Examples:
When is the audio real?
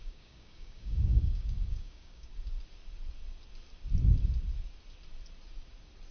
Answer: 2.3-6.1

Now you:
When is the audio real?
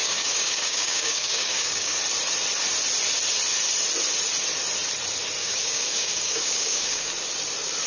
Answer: 2.0-5.4; 7.1-7.9